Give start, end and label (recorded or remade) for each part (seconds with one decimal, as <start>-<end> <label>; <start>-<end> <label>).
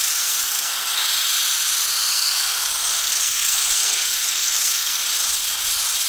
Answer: 0.0-1.0 remade; 1.0-2.1 recorded; 2.1-5.0 remade; 5.0-6.1 recorded